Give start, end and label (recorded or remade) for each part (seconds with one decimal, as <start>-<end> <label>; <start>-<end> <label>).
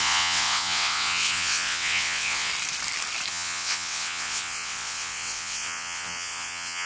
0.0-2.5 remade; 2.5-3.3 recorded; 3.3-6.9 remade